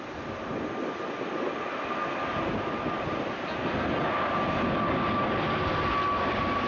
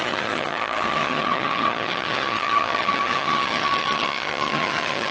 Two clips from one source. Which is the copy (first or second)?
second